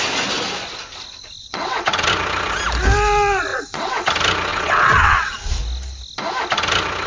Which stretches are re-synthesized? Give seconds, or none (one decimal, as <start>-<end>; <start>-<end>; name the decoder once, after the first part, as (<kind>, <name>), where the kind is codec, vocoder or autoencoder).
1.4-2.1 (vocoder, WaveNeXt); 3.5-4.1; 4.5-5.5